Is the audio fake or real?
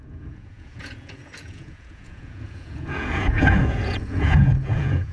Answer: fake